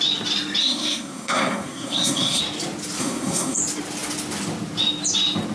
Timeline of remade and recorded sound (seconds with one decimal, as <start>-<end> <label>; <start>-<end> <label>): 0.0-0.6 recorded; 0.6-2.4 remade; 2.4-3.0 recorded; 3.0-3.6 remade; 3.6-5.5 recorded